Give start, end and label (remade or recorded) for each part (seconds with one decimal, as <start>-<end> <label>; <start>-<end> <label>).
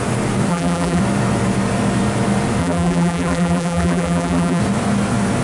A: 0.0-0.5 recorded; 0.5-1.0 remade; 1.0-2.6 recorded; 2.6-4.6 remade; 4.6-5.4 recorded